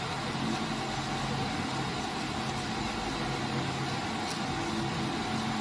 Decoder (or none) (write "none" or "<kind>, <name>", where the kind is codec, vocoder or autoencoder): none